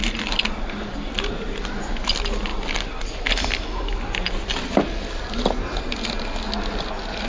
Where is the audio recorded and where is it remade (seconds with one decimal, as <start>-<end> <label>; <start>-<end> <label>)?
0.0-7.3 recorded